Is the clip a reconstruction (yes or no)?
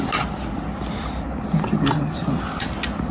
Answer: no